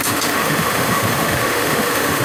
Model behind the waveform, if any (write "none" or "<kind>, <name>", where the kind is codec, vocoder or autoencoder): autoencoder, DAC-VAE